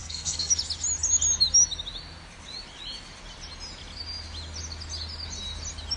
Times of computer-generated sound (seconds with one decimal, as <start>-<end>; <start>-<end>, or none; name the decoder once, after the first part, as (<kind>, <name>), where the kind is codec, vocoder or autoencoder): 0.0-0.5 (codec, SNAC)